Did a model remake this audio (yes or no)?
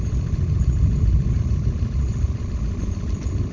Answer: yes